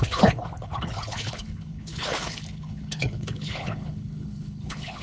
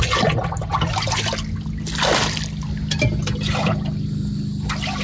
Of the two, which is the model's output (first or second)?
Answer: first